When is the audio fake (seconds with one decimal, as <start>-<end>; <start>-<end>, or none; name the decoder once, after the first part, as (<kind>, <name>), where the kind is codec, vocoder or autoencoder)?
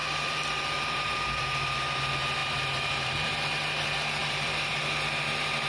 0.0-2.0 (vocoder, BigVGAN v2); 2.4-3.3; 4.2-4.8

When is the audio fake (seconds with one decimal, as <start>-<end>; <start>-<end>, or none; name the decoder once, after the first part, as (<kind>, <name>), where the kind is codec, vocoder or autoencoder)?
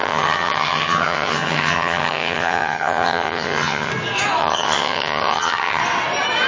0.0-3.9 (vocoder, HiFi-GAN); 4.4-5.8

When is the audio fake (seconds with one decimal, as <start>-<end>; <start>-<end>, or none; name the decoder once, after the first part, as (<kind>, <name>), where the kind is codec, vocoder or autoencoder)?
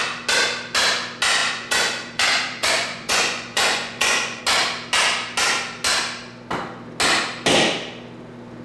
1.4-4.4 (vocoder, Vocos)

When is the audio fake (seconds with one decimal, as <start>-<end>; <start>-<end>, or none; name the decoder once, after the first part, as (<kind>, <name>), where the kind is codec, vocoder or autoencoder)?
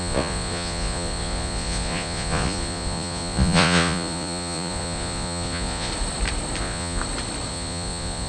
0.0-5.9 (vocoder, Vocos); 6.6-7.0; 7.5-8.3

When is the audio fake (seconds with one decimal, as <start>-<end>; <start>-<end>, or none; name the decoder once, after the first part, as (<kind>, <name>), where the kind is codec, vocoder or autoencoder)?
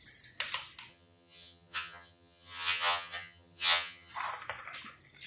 0.9-4.1 (vocoder, HiFi-GAN)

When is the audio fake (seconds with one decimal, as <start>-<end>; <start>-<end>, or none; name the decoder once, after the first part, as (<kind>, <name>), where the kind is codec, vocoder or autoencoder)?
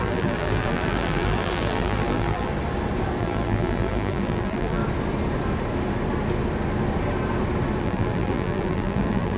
0.0-2.5 (vocoder, BigVGAN v2); 3.2-4.8; 7.8-9.4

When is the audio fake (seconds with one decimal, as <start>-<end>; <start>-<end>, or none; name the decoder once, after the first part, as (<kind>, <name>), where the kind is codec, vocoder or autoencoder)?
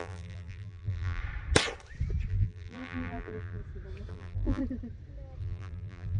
0.0-1.2 (vocoder, BigVGAN v2); 2.3-3.6; 4.1-4.6; 5.4-6.2